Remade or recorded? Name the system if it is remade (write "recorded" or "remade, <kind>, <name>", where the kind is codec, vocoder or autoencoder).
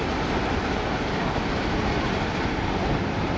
recorded